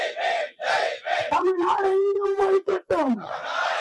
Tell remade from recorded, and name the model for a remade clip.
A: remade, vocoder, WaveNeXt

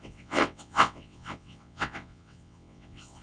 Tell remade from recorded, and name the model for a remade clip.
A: remade, vocoder, WaveNeXt